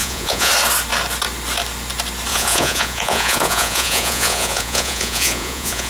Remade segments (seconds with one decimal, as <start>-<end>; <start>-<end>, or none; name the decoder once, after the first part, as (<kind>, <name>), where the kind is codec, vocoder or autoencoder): 0.0-0.5 (vocoder, Vocos); 2.3-5.9